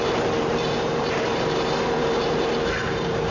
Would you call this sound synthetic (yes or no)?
yes